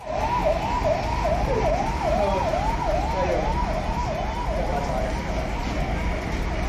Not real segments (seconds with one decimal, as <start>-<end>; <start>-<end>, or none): none